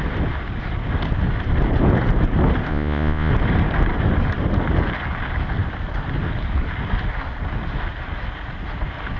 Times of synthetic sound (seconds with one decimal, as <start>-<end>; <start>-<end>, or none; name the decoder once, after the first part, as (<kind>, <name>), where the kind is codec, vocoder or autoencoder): 2.7-3.3 (vocoder, Vocos)